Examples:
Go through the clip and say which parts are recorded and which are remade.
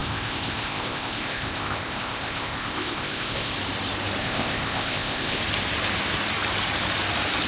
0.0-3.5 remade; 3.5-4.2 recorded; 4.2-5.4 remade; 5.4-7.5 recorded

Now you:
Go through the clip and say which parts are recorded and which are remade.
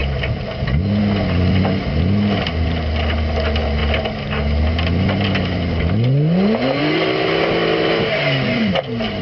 0.0-9.2 recorded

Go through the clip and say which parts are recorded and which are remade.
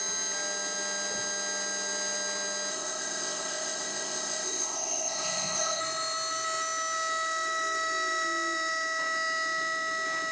0.0-2.7 recorded; 2.7-5.8 remade; 5.8-10.3 recorded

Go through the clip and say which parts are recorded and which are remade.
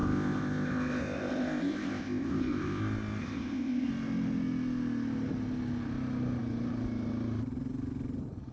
0.0-2.8 remade; 2.8-3.2 recorded; 3.2-3.9 remade; 3.9-8.5 recorded